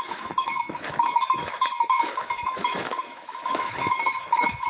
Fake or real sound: fake